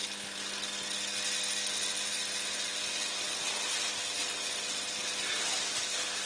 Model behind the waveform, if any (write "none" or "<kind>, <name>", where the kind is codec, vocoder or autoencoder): none